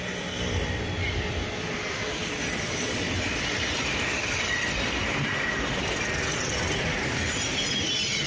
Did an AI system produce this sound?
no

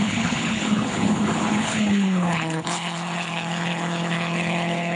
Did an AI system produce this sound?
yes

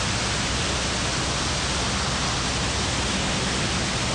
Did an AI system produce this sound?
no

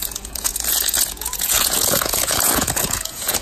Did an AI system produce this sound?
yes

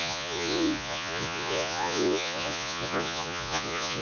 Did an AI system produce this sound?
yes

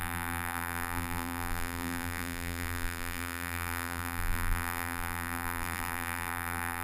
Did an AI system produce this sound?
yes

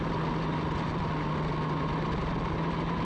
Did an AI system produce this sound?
no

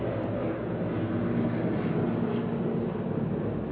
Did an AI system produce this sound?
no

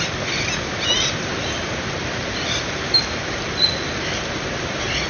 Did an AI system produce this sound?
no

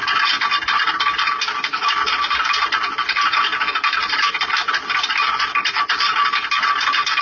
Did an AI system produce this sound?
no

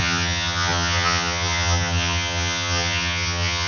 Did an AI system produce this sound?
yes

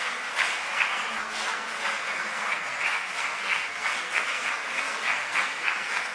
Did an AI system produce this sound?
yes